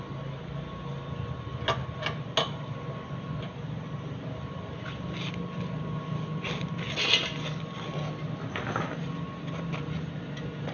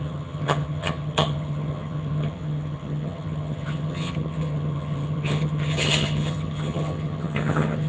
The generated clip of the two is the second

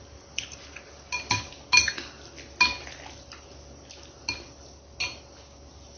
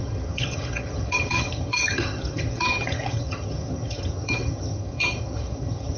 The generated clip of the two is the second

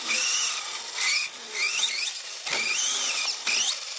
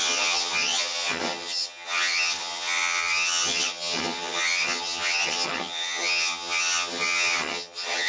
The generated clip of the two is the second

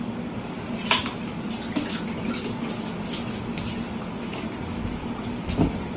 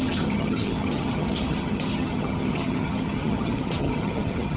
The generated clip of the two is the second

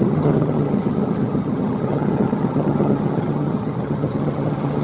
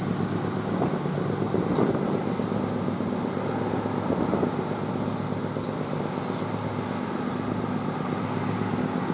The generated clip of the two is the first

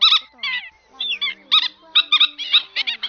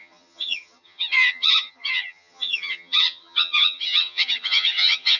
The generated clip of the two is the second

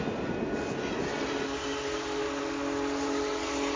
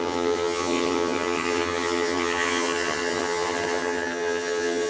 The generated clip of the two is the second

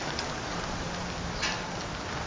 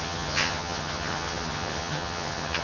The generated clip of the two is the second